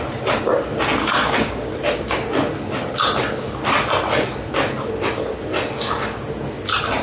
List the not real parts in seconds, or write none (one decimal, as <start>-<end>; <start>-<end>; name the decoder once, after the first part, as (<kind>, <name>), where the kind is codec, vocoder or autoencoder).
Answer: 1.0-1.7 (codec, DAC)